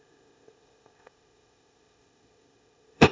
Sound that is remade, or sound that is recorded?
remade